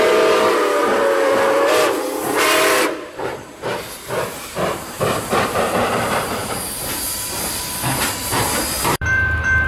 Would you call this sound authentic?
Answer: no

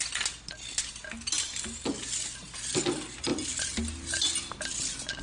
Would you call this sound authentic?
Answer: yes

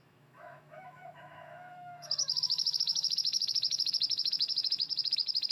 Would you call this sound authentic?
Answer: no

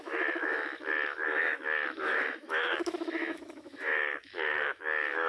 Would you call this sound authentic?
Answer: no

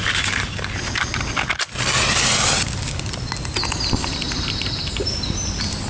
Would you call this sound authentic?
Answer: yes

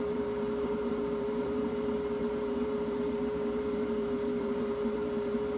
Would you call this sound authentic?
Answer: no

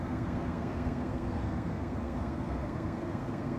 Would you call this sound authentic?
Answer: no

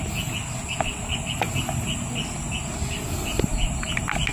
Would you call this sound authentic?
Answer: yes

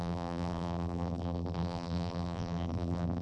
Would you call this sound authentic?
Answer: no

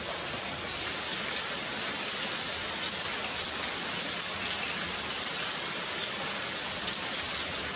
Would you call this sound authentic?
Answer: yes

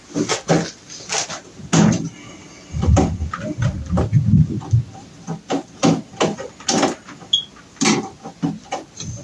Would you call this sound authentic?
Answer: yes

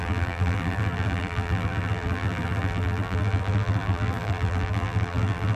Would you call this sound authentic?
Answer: no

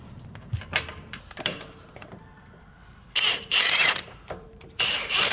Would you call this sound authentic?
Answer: no